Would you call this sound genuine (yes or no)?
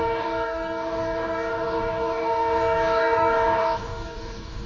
no